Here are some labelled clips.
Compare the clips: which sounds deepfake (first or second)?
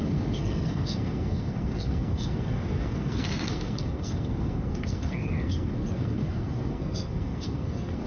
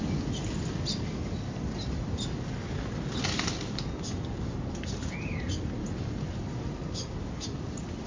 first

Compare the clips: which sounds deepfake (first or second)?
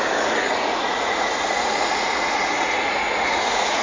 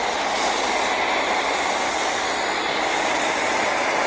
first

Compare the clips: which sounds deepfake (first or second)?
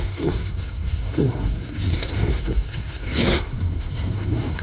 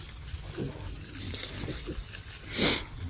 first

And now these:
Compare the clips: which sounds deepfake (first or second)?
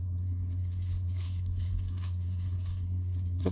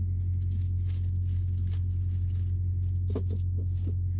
first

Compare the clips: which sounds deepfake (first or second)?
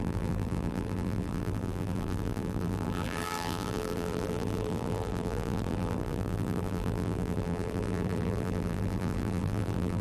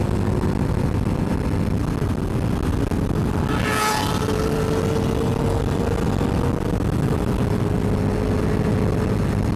first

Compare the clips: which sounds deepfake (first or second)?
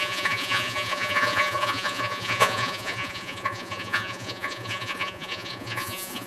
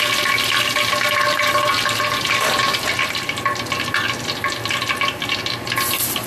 first